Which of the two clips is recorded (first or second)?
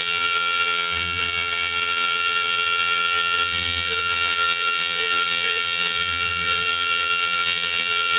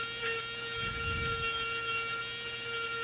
second